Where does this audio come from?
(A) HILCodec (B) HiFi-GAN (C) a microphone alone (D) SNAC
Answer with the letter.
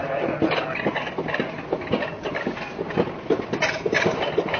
C